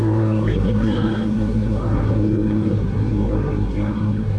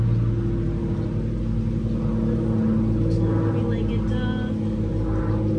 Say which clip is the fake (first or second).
first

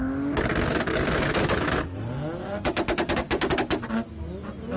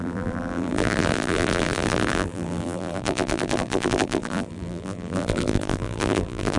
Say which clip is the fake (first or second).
second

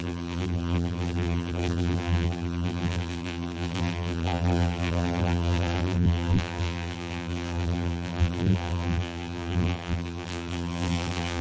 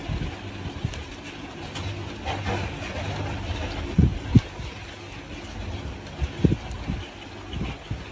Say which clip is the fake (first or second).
first